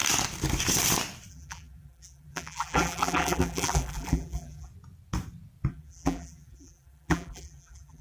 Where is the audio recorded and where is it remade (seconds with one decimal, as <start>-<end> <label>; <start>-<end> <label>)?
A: 0.0-1.3 recorded; 1.3-4.7 remade; 4.7-5.7 recorded; 5.7-8.0 remade